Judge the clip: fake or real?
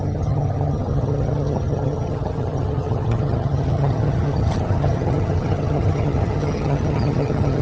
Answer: fake